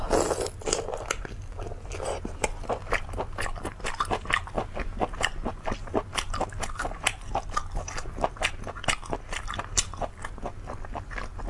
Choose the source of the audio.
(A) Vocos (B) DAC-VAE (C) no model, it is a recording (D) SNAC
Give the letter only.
C